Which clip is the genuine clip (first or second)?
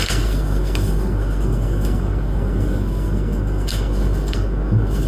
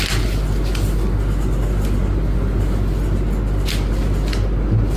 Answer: second